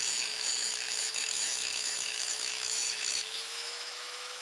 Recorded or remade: remade